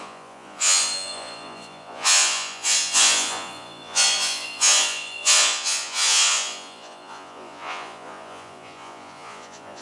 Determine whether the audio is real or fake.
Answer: fake